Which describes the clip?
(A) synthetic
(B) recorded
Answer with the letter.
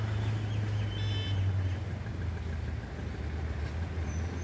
B